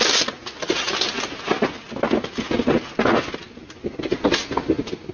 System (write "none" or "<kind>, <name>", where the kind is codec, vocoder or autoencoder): none